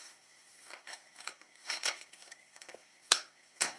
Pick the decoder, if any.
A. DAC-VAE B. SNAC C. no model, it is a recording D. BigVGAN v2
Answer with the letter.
B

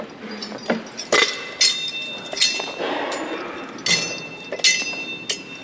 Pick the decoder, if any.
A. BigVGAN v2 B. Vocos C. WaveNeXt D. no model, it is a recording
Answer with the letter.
D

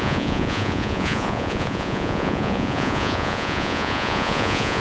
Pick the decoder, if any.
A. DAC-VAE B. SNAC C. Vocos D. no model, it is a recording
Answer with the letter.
C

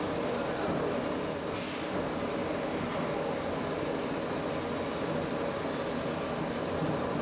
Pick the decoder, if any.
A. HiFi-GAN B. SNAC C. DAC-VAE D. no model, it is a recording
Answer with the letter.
D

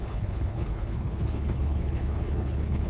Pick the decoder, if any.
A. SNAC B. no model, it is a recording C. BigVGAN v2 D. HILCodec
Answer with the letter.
D